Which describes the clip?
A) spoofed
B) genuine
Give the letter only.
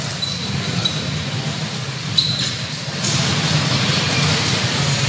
B